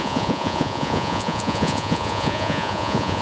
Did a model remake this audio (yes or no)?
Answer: yes